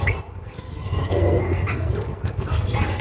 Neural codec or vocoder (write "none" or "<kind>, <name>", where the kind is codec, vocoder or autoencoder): codec, SNAC